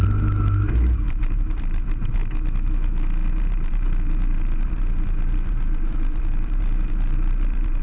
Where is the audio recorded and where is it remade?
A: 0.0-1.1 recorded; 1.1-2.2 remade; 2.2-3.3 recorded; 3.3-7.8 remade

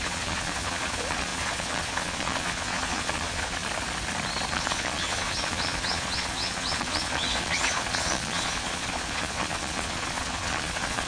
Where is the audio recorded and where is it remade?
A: 0.0-3.6 remade; 3.6-4.5 recorded; 4.5-11.1 remade

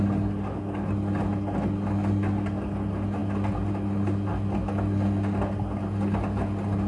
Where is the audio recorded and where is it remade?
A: 0.0-6.9 recorded

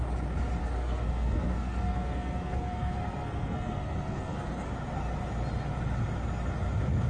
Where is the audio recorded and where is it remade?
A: 0.0-0.6 recorded; 0.6-4.7 remade; 4.7-7.1 recorded

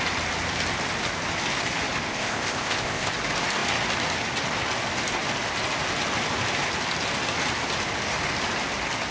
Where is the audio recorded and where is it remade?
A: 0.0-2.1 recorded; 2.1-3.1 remade; 3.1-9.1 recorded